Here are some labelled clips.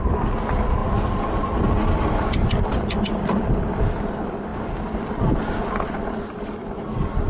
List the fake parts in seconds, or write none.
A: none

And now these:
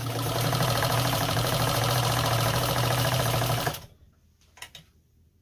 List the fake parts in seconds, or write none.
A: 0.0-3.2 (vocoder, BigVGAN v2)

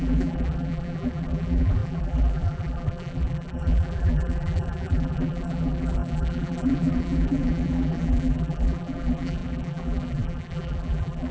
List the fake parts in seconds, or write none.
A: 0.0-11.3 (vocoder, BigVGAN v2)